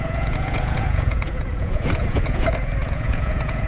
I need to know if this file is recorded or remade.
remade